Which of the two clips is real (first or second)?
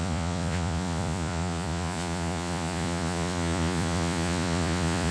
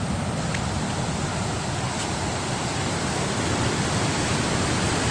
second